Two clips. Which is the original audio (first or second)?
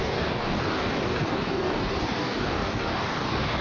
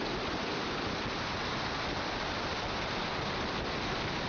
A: second